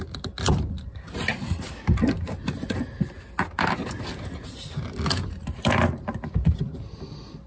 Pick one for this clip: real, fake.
real